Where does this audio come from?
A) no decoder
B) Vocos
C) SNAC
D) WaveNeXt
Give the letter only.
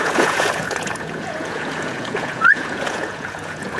B